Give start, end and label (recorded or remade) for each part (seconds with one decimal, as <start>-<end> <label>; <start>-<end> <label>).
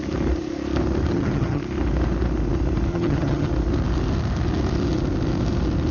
0.0-1.1 recorded; 1.1-1.6 remade; 1.6-2.9 recorded; 2.9-3.5 remade; 3.5-5.9 recorded